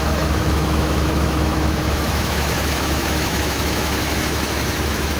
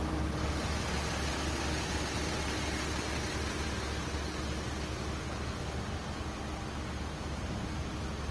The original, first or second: second